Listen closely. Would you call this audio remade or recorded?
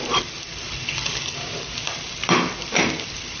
remade